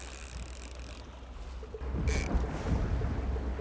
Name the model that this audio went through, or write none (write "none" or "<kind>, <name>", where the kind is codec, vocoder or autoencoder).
none